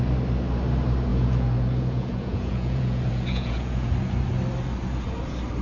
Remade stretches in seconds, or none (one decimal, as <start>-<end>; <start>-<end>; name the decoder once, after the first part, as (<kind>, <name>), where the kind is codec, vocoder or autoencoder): 1.1-3.9 (vocoder, Vocos)